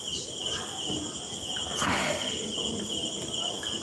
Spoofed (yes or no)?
no